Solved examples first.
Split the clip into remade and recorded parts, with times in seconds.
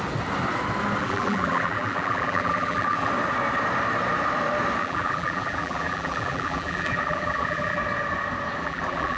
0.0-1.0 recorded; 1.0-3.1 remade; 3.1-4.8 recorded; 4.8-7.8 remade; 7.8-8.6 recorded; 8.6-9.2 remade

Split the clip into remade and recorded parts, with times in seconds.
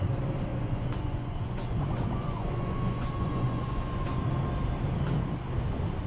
0.0-0.5 recorded; 0.5-4.2 remade; 4.2-6.1 recorded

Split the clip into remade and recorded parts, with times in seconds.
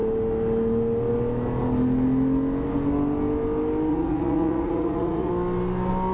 0.0-3.9 recorded; 3.9-5.3 remade; 5.3-6.1 recorded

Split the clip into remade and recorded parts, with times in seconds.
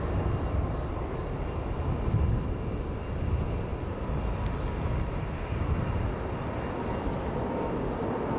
0.0-8.4 recorded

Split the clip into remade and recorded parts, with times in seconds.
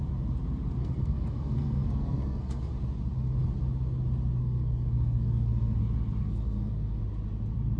0.0-0.8 recorded; 0.8-2.7 remade; 2.7-4.4 recorded; 4.4-5.8 remade; 5.8-6.2 recorded; 6.2-7.0 remade; 7.0-7.8 recorded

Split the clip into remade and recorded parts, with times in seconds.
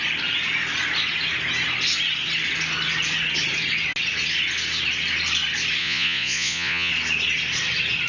0.0-5.8 recorded; 5.8-6.9 remade; 6.9-8.1 recorded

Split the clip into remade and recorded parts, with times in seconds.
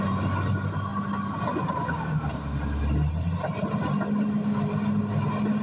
0.0-5.6 recorded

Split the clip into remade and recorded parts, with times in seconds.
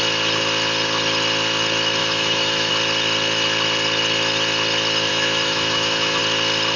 0.0-2.0 recorded; 2.0-2.7 remade; 2.7-5.1 recorded; 5.1-6.2 remade; 6.2-6.8 recorded